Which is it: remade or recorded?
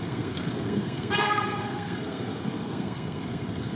remade